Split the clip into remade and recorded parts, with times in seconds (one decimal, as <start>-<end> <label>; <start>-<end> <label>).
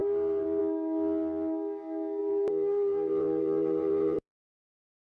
0.0-0.6 remade; 0.6-2.2 recorded; 2.2-4.6 remade; 4.6-5.2 recorded